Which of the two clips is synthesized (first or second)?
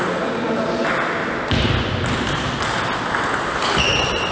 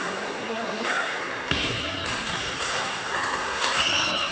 second